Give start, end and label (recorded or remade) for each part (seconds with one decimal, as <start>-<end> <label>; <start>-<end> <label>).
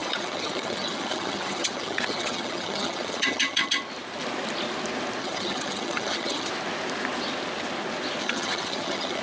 0.0-3.8 remade; 3.8-5.2 recorded; 5.2-6.5 remade; 6.5-8.2 recorded; 8.2-9.2 remade